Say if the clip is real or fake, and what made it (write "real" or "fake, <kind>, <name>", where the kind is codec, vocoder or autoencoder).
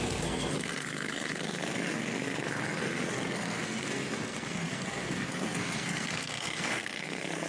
fake, codec, SNAC